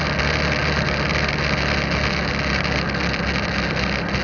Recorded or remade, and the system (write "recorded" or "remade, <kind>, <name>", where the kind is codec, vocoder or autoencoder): recorded